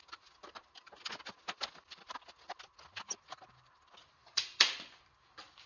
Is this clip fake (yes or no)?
no